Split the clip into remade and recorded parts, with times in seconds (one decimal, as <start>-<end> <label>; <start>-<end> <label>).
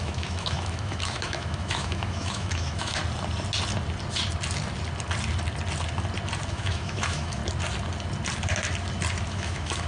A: 0.0-3.0 remade; 3.0-6.5 recorded; 6.5-7.4 remade; 7.4-9.3 recorded; 9.3-9.9 remade